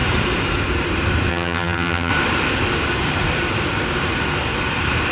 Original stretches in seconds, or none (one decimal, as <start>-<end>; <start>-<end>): 0.0-1.3; 2.1-5.1